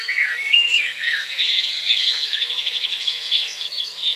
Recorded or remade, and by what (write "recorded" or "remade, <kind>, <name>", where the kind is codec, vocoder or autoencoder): remade, codec, SNAC